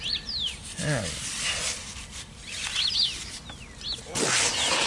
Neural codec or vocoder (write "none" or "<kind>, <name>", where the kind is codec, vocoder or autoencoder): none